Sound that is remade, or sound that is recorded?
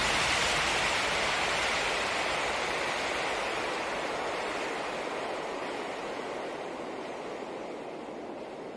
recorded